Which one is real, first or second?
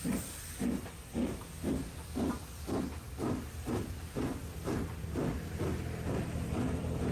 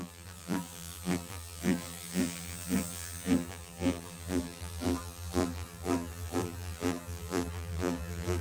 first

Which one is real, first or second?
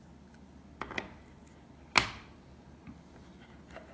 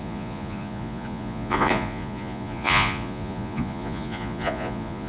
first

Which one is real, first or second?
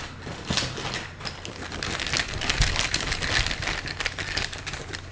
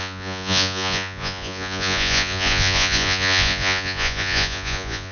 first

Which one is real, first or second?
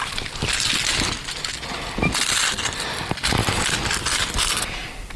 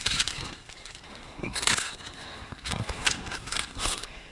first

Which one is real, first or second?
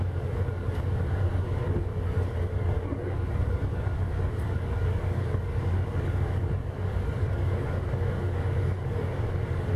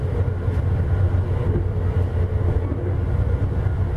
second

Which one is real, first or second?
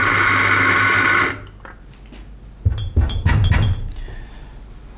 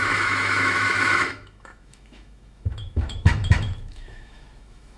first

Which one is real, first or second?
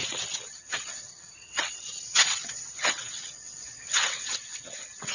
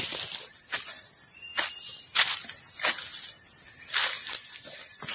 second